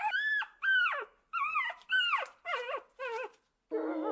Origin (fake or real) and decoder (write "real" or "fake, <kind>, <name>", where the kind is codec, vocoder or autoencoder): real